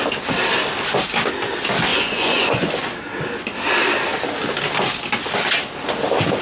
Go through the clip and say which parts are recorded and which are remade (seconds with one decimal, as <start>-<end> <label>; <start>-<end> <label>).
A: 0.0-1.9 recorded; 1.9-2.7 remade; 2.7-6.4 recorded